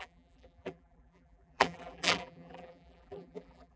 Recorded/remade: remade